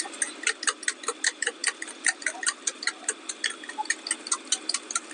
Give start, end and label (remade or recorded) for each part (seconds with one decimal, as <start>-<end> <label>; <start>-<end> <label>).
0.0-5.1 recorded